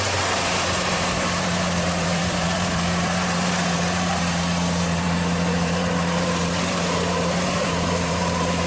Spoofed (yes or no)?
yes